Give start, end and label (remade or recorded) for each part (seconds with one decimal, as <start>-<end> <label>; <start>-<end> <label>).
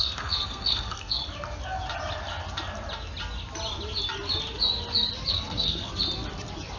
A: 0.0-1.2 remade; 1.2-5.3 recorded; 5.3-5.9 remade; 5.9-6.8 recorded